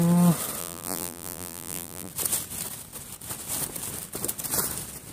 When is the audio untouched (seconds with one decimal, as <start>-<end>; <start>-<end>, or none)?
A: 0.0-0.6; 2.1-5.1